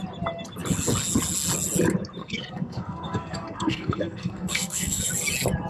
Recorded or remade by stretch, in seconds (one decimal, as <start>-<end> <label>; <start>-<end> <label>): 0.0-2.2 recorded; 2.2-5.0 remade; 5.0-5.7 recorded